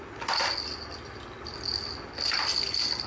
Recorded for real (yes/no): yes